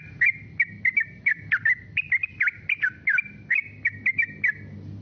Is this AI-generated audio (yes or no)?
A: no